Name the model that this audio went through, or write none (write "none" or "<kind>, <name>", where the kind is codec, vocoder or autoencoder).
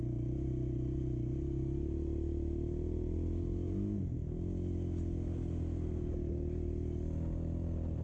none